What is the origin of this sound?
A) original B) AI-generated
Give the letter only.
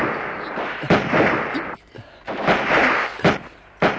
A